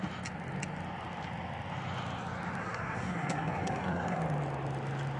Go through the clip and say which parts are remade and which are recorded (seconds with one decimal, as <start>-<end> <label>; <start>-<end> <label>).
0.0-2.6 recorded; 2.6-4.2 remade; 4.2-5.2 recorded

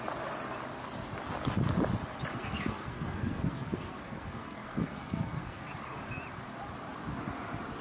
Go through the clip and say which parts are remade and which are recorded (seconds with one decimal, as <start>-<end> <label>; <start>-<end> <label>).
0.0-2.3 recorded; 2.3-5.6 remade; 5.6-7.8 recorded

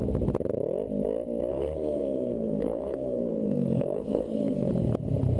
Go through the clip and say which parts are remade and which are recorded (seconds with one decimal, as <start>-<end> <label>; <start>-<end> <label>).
0.0-1.5 recorded; 1.5-4.7 remade; 4.7-5.4 recorded